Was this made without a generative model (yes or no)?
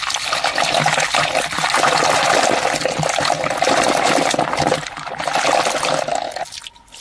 yes